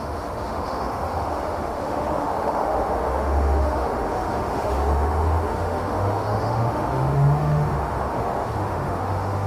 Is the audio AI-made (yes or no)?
yes